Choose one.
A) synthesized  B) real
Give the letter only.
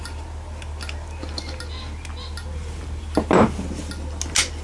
B